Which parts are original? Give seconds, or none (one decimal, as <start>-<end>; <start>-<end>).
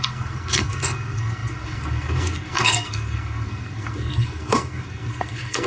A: none